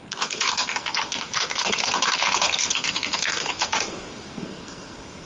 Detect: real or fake fake